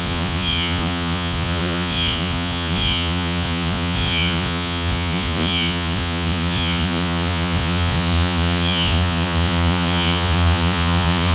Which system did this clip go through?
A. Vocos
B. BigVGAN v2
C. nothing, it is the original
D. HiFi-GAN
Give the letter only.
A